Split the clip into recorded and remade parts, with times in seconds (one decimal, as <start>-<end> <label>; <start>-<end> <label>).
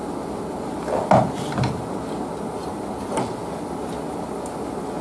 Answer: 0.0-5.0 recorded